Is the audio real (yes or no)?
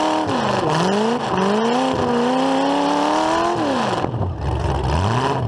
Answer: yes